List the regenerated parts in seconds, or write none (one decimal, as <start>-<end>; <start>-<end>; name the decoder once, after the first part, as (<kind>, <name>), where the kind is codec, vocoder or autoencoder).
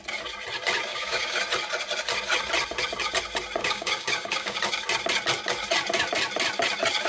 0.9-1.4 (codec, DAC); 3.6-4.6